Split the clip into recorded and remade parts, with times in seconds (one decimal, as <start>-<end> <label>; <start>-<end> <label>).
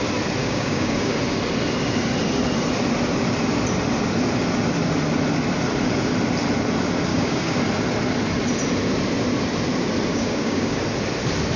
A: 0.0-0.4 recorded; 0.4-1.1 remade; 1.1-7.1 recorded; 7.1-7.6 remade; 7.6-10.1 recorded; 10.1-10.8 remade; 10.8-11.6 recorded